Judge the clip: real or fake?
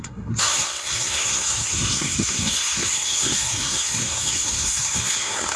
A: fake